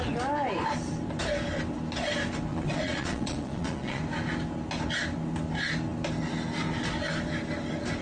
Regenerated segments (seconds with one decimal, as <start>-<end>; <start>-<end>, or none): 2.5-4.0